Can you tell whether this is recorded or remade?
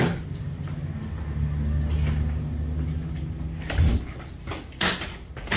recorded